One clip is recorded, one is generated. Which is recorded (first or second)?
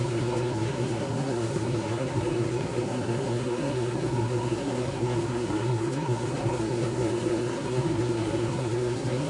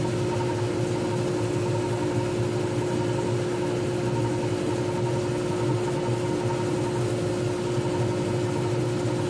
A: second